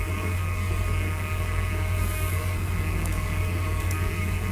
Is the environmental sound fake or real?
fake